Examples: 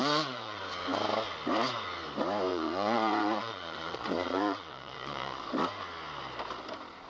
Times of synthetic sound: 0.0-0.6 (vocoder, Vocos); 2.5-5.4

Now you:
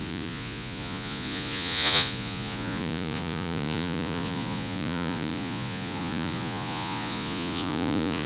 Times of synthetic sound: 0.0-8.3 (vocoder, Vocos)

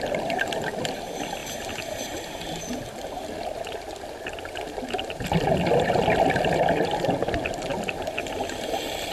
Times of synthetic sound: none

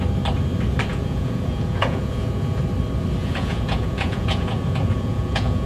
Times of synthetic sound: 0.9-2.6 (vocoder, Vocos); 3.2-5.7

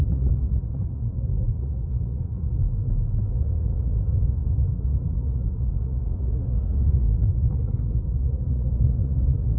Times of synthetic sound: 0.0-2.6 (vocoder, Vocos); 3.4-9.6

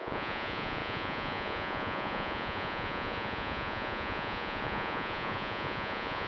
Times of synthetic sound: 0.0-6.3 (vocoder, Vocos)